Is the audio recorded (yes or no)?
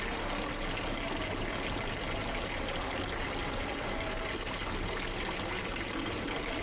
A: yes